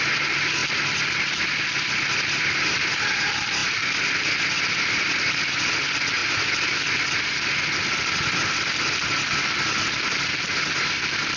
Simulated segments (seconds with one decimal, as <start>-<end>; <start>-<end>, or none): none

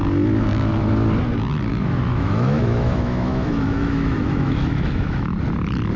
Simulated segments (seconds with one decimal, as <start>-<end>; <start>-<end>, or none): 1.7-5.3

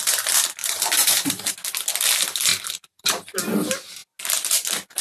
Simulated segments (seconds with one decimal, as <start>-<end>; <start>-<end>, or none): 0.6-1.5; 2.5-3.2

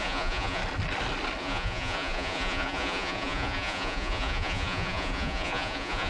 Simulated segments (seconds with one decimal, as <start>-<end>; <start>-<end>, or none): 0.0-0.6; 1.4-6.1

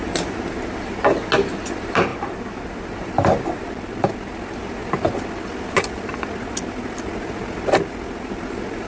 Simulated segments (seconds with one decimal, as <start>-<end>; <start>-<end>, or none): none

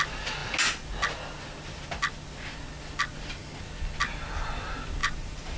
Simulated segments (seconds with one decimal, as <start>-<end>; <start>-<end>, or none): 5.0-5.6

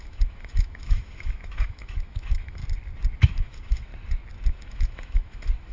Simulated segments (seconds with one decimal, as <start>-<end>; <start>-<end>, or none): 0.0-2.6; 3.3-3.9; 4.5-5.7

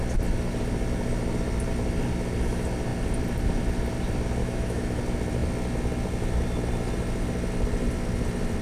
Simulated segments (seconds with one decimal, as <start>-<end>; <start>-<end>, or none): 4.4-5.0